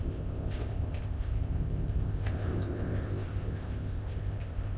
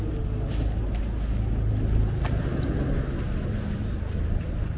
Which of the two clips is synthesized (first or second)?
first